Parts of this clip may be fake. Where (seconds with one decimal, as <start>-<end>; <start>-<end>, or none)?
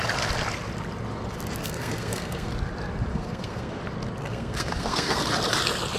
1.6-2.5; 3.1-3.8; 4.2-5.2